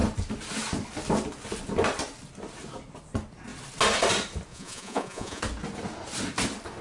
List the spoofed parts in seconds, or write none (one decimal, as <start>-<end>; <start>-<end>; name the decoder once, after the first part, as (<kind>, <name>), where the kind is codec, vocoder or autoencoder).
4.5-5.4 (vocoder, Vocos)